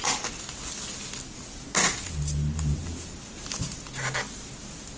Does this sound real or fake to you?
real